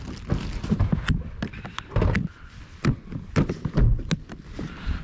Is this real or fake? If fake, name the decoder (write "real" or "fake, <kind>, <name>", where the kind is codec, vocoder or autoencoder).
real